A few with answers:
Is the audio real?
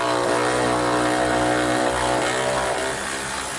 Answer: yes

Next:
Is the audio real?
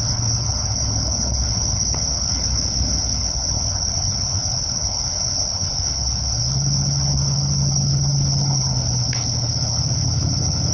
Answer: no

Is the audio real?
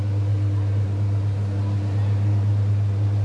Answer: yes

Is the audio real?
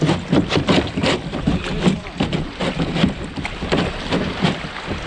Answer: yes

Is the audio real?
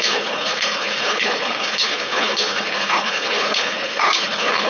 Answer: no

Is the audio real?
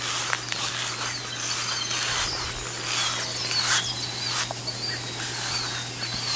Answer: yes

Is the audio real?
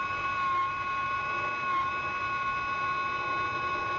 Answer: yes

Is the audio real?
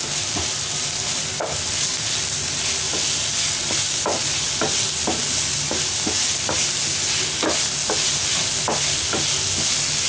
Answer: yes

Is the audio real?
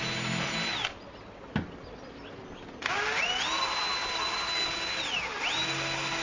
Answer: yes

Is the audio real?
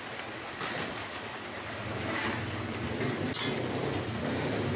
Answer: yes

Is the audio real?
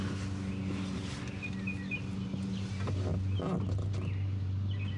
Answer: yes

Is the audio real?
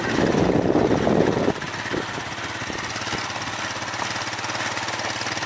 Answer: yes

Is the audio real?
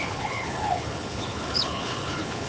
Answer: no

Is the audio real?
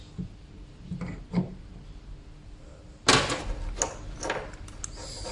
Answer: yes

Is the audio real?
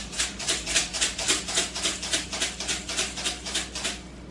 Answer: yes